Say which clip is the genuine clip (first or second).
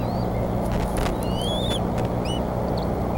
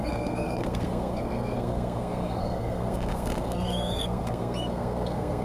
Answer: first